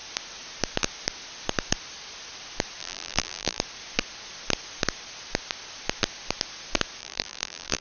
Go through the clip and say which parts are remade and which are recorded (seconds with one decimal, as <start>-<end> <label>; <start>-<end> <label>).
0.0-2.8 recorded; 2.8-3.6 remade; 3.6-7.0 recorded; 7.0-7.8 remade